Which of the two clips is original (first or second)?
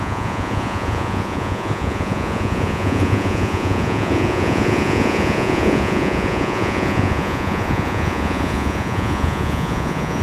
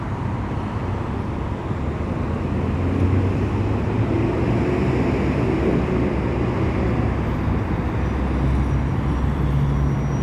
second